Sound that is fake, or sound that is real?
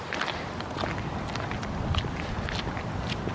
real